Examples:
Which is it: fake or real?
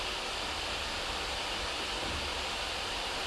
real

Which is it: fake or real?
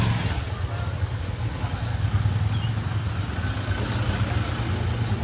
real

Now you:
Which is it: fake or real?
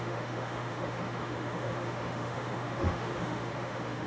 fake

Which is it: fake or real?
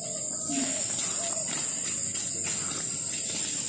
real